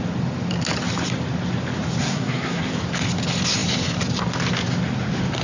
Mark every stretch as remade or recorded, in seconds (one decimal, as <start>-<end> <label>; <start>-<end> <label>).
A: 0.0-2.0 recorded; 2.0-2.6 remade; 2.6-5.4 recorded